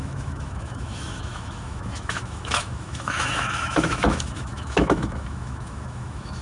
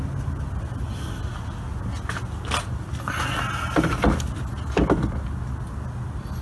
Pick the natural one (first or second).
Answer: second